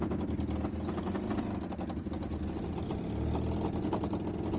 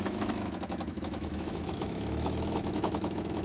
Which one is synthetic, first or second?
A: second